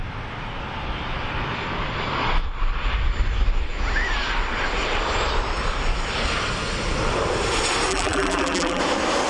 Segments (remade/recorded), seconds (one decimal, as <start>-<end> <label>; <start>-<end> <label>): 0.0-7.9 recorded; 7.9-8.8 remade; 8.8-9.3 recorded